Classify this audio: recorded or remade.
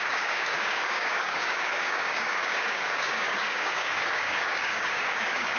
remade